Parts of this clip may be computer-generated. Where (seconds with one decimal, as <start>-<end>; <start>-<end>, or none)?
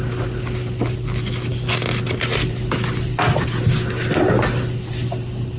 none